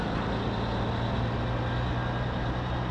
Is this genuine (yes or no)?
yes